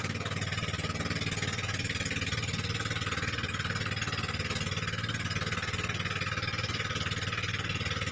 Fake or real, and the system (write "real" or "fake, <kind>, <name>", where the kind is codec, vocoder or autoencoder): real